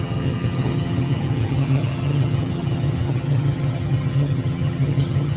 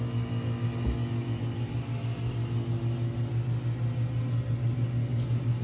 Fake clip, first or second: first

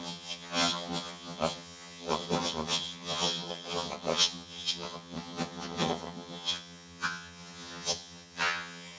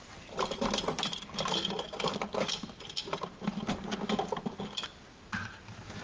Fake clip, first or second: first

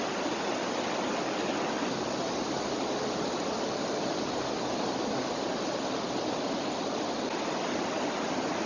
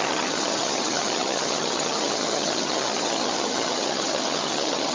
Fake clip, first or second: second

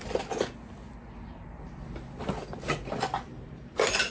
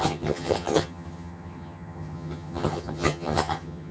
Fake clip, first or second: second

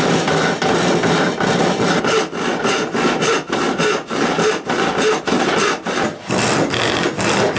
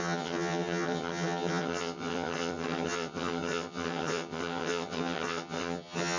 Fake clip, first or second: second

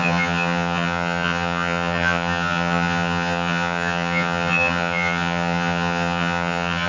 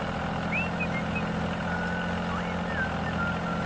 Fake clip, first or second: first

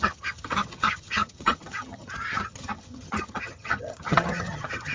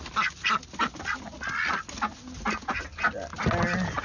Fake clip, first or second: first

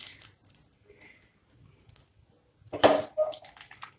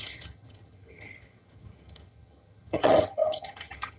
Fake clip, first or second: second